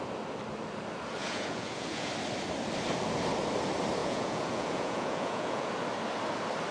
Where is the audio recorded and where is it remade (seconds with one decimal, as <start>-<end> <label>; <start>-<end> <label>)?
0.0-1.2 recorded; 1.2-2.1 remade; 2.1-4.0 recorded; 4.0-5.7 remade; 5.7-6.7 recorded